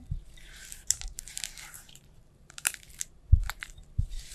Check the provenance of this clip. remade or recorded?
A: remade